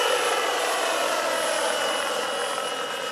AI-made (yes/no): no